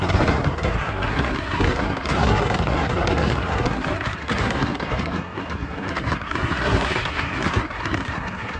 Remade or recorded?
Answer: remade